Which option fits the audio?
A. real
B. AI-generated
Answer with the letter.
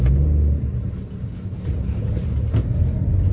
A